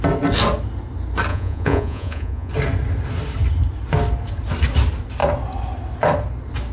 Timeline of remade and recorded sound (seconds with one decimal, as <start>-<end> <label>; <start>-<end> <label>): 0.0-1.3 recorded; 1.3-2.5 remade; 2.5-6.7 recorded